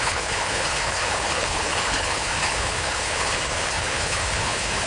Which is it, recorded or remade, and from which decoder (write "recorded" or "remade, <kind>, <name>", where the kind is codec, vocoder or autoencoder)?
remade, codec, HILCodec